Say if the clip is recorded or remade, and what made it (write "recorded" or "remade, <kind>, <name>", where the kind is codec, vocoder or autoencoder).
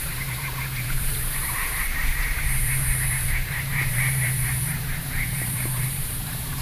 remade, vocoder, BigVGAN v2